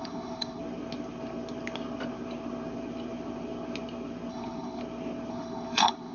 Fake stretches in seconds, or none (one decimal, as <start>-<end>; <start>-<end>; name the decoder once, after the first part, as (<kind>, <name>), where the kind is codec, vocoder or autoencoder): 0.0-0.6 (codec, HILCodec); 4.3-4.8; 5.3-6.1